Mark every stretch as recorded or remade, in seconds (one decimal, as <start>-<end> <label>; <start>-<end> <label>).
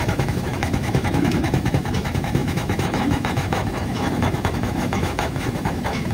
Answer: 0.0-6.1 remade